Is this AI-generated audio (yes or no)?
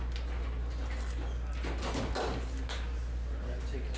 no